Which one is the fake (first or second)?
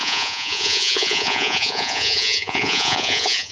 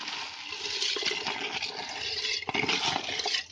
first